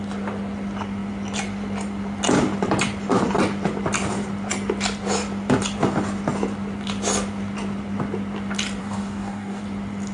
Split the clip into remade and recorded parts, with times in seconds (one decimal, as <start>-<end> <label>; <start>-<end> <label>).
0.0-8.8 recorded; 8.8-9.6 remade; 9.6-10.1 recorded